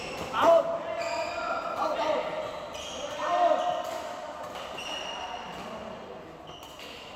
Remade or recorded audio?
recorded